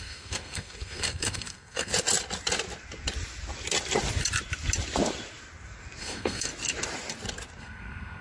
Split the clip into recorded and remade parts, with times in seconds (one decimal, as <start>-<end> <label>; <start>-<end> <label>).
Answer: 0.0-1.9 remade; 1.9-6.0 recorded; 6.0-6.5 remade; 6.5-7.6 recorded; 7.6-8.2 remade